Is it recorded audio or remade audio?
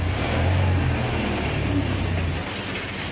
recorded